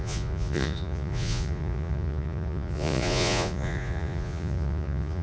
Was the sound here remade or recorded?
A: remade